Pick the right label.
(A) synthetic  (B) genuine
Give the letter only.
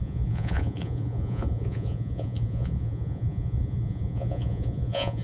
A